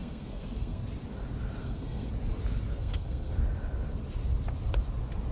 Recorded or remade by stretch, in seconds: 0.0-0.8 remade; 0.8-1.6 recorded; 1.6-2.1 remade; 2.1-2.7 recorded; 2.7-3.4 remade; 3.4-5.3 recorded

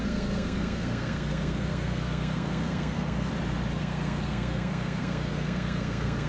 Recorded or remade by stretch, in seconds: 0.0-3.3 remade; 3.3-3.8 recorded; 3.8-6.3 remade

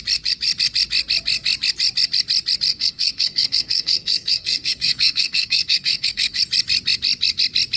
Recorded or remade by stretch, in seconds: 0.0-2.7 recorded; 2.7-6.4 remade; 6.4-7.8 recorded

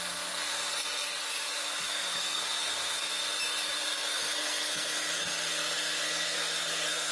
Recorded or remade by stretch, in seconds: 0.0-3.2 remade; 3.2-3.8 recorded; 3.8-7.1 remade

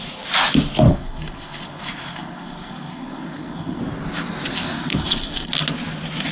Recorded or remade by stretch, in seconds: 0.0-0.9 recorded; 0.9-3.8 remade; 3.8-4.5 recorded; 4.5-5.5 remade; 5.5-6.3 recorded

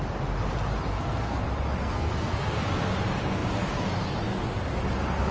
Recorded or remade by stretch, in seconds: 0.0-0.9 recorded; 0.9-1.4 remade; 1.4-1.8 recorded; 1.8-2.6 remade; 2.6-5.3 recorded

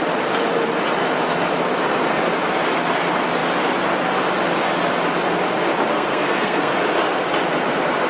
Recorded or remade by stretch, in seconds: 0.0-5.9 recorded; 5.9-6.7 remade; 6.7-8.1 recorded

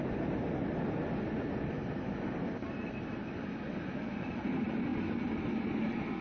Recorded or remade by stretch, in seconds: 0.0-6.2 recorded